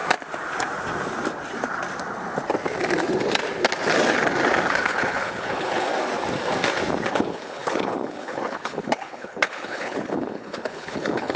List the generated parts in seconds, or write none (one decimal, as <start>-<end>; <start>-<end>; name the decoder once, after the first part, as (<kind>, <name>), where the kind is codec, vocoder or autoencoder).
4.7-5.9 (codec, HILCodec); 7.1-11.4